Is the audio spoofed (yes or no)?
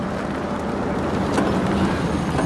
no